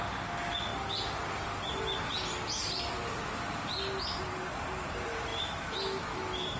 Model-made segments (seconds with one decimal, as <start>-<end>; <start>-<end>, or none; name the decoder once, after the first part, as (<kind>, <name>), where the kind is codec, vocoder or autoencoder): 5.3-6.6 (autoencoder, DAC-VAE)